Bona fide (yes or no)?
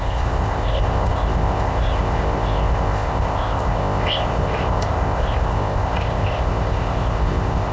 no